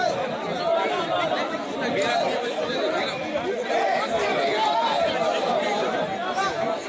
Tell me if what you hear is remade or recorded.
recorded